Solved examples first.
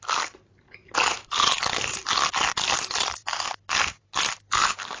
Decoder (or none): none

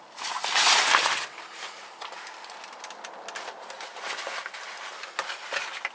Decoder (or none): none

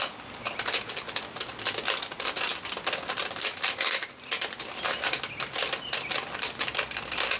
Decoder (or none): none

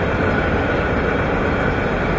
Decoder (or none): none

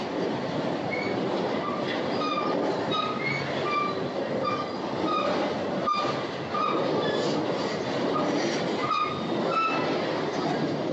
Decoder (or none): none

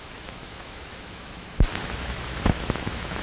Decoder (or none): autoencoder, DAC-VAE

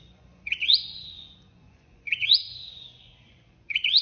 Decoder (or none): vocoder, Vocos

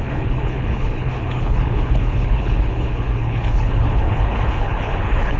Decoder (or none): codec, HILCodec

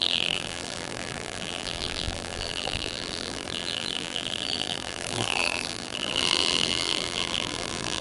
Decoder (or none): vocoder, BigVGAN v2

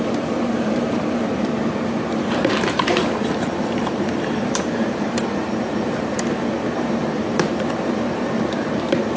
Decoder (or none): vocoder, BigVGAN v2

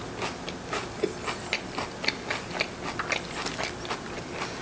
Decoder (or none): none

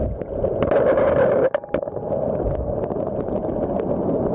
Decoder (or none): none